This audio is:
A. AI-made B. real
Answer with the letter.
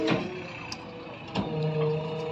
B